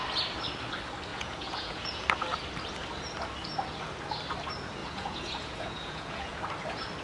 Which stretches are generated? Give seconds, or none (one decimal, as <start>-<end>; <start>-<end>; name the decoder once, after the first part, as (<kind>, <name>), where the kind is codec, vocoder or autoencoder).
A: 1.1-2.0 (vocoder, Vocos); 4.8-6.4